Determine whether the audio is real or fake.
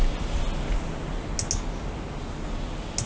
real